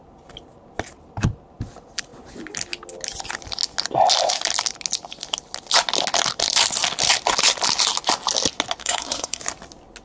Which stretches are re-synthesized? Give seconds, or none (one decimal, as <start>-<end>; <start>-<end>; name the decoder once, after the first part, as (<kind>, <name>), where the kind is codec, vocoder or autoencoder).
8.8-9.4 (codec, SNAC)